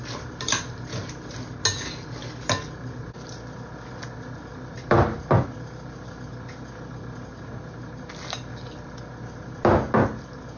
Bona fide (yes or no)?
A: yes